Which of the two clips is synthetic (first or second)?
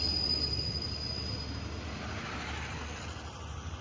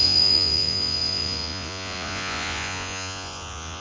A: second